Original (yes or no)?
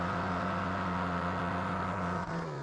no